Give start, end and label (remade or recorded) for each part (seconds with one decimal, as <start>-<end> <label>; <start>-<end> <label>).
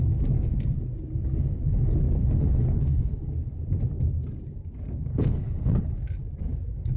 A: 0.0-2.2 recorded; 2.2-3.3 remade; 3.3-5.1 recorded; 5.1-5.8 remade; 5.8-7.0 recorded